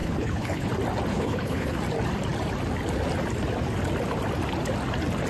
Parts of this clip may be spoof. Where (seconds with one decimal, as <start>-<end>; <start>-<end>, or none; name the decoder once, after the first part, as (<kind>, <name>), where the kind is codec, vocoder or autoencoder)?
0.0-0.7 (codec, HILCodec); 1.1-1.8